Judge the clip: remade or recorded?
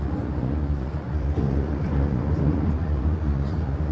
remade